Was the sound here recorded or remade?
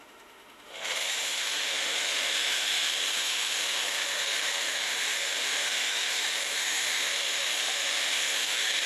remade